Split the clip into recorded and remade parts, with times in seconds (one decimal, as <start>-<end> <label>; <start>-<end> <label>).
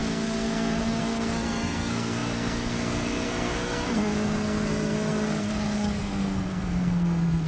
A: 0.0-7.5 remade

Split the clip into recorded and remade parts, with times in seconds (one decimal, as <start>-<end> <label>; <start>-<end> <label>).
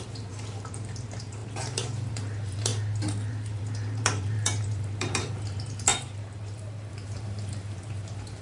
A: 0.0-2.7 remade; 2.7-3.3 recorded; 3.3-8.4 remade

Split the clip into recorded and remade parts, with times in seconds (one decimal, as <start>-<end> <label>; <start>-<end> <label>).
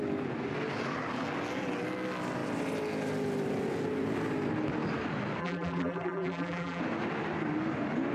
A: 0.0-5.4 recorded; 5.4-6.8 remade; 6.8-8.1 recorded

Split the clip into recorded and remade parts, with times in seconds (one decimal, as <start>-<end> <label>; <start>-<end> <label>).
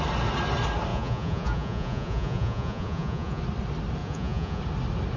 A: 0.0-0.9 recorded; 0.9-3.4 remade; 3.4-4.0 recorded; 4.0-4.6 remade; 4.6-5.2 recorded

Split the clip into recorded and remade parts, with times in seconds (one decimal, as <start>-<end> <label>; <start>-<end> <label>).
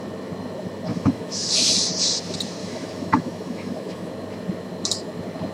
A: 0.0-0.9 recorded; 0.9-1.5 remade; 1.5-2.6 recorded; 2.6-4.1 remade; 4.1-5.5 recorded